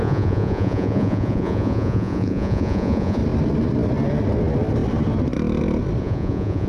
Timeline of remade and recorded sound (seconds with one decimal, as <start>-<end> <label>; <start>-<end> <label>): 0.0-3.2 remade; 3.2-6.0 recorded; 6.0-6.7 remade